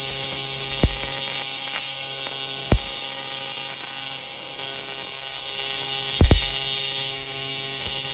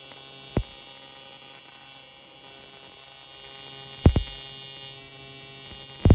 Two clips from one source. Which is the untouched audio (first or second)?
second